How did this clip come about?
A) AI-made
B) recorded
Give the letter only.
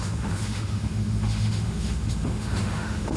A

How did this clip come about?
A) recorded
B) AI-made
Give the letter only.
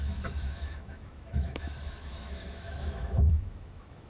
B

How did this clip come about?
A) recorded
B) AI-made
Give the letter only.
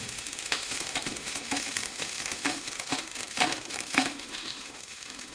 B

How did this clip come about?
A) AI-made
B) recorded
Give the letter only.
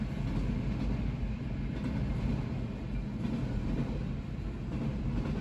B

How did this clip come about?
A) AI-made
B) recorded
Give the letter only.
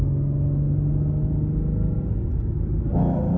B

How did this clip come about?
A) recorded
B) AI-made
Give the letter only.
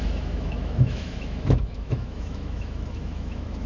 B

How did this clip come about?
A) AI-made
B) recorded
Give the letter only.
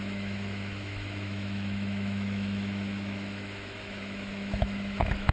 A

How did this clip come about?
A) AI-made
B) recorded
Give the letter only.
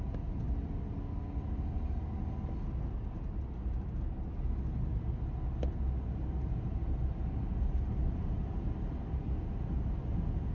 B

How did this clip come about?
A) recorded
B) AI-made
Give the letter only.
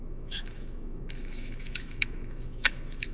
B